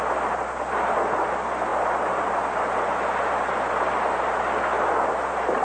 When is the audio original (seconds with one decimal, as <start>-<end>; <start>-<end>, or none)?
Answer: 0.0-5.6